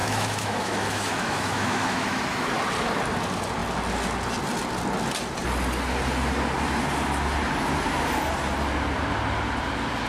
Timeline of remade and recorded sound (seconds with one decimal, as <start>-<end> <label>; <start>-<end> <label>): 0.0-2.5 remade; 2.5-10.1 recorded